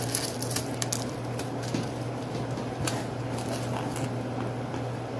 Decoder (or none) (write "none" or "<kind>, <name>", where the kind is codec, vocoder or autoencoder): none